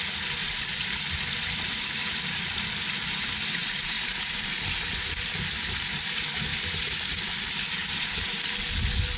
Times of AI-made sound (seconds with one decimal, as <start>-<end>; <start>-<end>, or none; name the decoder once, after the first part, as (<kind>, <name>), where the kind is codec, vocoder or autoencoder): 0.4-1.0 (vocoder, BigVGAN v2); 3.6-4.8; 7.8-8.5